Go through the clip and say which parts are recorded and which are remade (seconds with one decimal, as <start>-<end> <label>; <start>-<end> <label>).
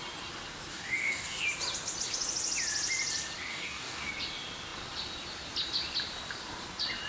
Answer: 0.0-0.7 recorded; 0.7-1.4 remade; 1.4-3.5 recorded; 3.5-4.1 remade; 4.1-7.1 recorded